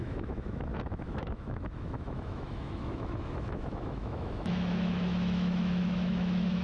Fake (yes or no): yes